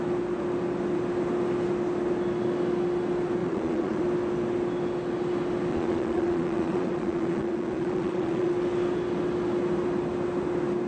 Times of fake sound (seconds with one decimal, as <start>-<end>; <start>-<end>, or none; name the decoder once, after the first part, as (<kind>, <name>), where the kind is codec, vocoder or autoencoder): 3.4-4.0 (vocoder, Vocos); 5.7-8.5